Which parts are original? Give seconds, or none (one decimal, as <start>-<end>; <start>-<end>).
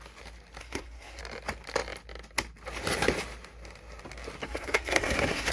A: 0.0-0.6; 1.2-4.4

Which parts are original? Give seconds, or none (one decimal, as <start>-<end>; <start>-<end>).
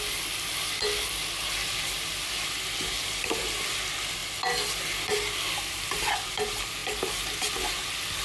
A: 0.0-8.2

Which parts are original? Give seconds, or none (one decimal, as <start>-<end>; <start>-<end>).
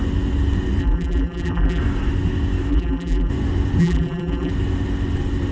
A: 0.0-0.8; 1.8-2.7; 3.3-3.8; 4.5-5.5